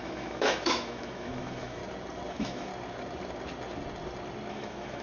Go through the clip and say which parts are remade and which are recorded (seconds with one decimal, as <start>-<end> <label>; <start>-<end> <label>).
0.0-1.8 remade; 1.8-2.3 recorded; 2.3-2.7 remade; 2.7-4.5 recorded; 4.5-5.0 remade